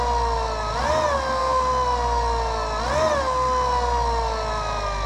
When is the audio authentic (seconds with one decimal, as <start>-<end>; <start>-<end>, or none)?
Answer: 0.0-5.1